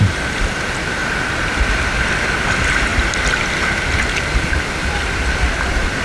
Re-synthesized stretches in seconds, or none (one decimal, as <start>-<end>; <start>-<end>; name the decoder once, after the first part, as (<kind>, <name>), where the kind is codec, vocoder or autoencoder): 1.0-2.0 (vocoder, BigVGAN v2); 4.8-6.0